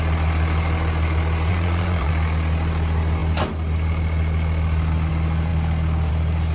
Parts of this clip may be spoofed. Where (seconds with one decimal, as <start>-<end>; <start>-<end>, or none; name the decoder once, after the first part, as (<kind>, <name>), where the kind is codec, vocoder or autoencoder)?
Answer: 1.5-2.1 (vocoder, Vocos)